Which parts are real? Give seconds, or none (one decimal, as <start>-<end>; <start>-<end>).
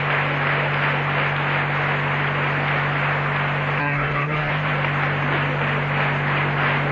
0.0-3.8; 4.5-6.9